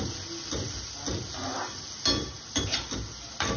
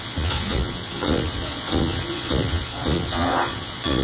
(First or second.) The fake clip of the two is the second